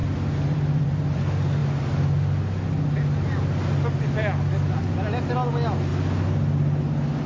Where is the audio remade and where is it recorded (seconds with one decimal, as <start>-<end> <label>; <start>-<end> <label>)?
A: 0.0-1.2 remade; 1.2-7.3 recorded